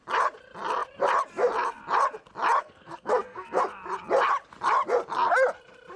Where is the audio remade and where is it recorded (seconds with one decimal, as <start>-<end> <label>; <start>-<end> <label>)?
0.0-2.6 recorded; 2.6-3.6 remade; 3.6-6.0 recorded